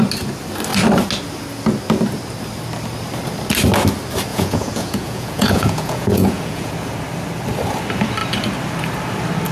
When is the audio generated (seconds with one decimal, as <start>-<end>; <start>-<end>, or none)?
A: 4.3-6.7